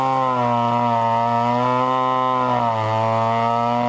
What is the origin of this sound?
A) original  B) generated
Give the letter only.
A